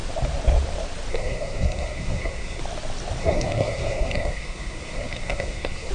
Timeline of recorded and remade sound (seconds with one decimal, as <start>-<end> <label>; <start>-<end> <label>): 0.0-1.1 recorded; 1.1-2.6 remade; 2.6-3.2 recorded; 3.2-5.9 remade